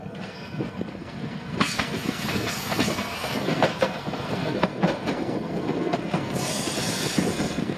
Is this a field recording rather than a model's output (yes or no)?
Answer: no